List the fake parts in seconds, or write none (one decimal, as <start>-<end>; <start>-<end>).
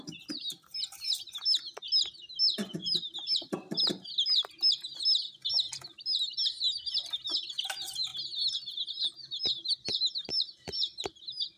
none